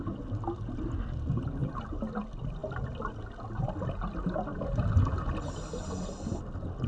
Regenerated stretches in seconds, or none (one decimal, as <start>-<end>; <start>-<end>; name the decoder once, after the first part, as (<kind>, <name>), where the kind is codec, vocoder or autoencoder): none